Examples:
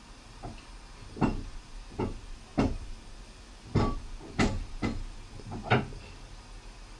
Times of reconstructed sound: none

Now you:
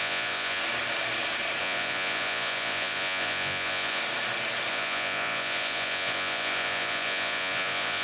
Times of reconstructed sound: 0.0-0.6 (vocoder, Vocos); 1.6-4.0; 4.7-8.0

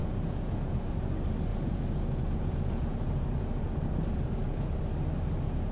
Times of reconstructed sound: 0.0-1.1 (vocoder, Vocos); 1.5-4.8

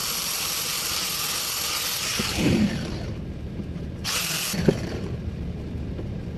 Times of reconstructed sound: 0.0-1.0 (vocoder, BigVGAN v2); 2.1-5.9

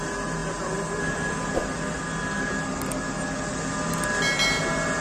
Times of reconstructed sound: none

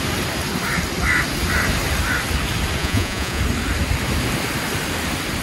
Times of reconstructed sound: 2.8-3.4 (vocoder, Vocos)

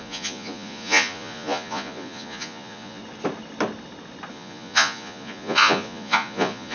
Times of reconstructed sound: 0.0-3.0 (vocoder, Vocos); 4.3-6.7